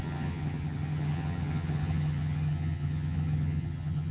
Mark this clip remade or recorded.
remade